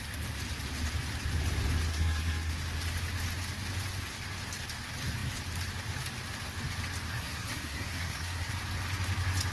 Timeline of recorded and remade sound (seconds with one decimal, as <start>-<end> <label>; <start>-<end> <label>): 0.0-1.9 recorded; 1.9-2.5 remade; 2.5-7.1 recorded; 7.1-8.5 remade; 8.5-9.5 recorded